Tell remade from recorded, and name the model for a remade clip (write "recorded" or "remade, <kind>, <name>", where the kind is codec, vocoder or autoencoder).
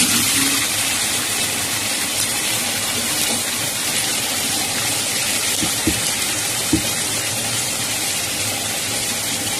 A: remade, vocoder, BigVGAN v2